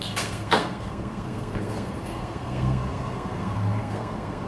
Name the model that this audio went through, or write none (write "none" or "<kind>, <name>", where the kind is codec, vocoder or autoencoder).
codec, SNAC